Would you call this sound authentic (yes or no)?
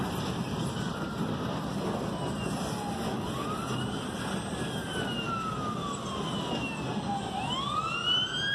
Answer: yes